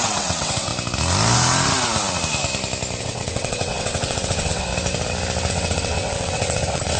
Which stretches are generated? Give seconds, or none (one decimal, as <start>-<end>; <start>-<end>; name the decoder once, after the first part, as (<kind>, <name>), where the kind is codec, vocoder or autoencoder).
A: 0.0-0.7 (vocoder, WaveNeXt); 3.0-4.7; 5.5-7.0